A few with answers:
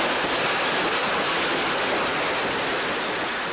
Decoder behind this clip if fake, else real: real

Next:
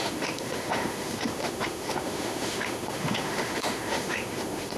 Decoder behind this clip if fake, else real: fake, autoencoder, DAC-VAE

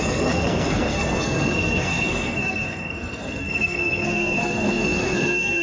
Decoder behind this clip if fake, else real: fake, codec, SNAC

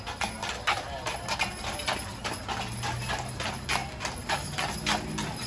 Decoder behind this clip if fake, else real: real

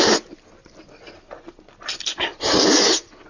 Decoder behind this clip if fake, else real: real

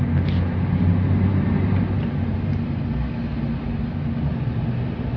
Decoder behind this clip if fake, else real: real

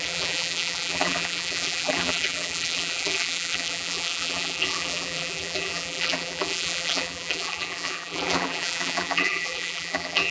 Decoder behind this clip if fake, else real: fake, vocoder, BigVGAN v2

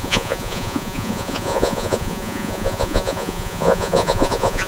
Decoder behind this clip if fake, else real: fake, vocoder, Vocos